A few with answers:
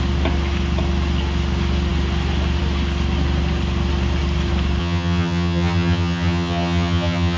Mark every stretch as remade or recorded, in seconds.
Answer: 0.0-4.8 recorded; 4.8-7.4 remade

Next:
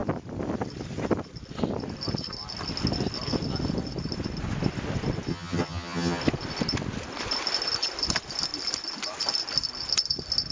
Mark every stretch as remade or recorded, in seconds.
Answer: 0.0-5.3 recorded; 5.3-6.2 remade; 6.2-10.5 recorded

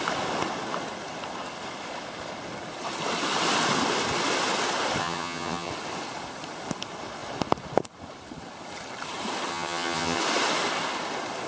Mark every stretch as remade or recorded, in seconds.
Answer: 0.0-5.0 recorded; 5.0-5.7 remade; 5.7-9.5 recorded; 9.5-10.2 remade; 10.2-11.5 recorded

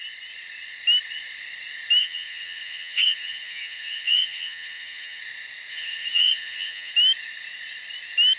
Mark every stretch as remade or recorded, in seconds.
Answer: 0.0-2.0 recorded; 2.0-5.2 remade; 5.2-5.7 recorded; 5.7-6.9 remade; 6.9-8.4 recorded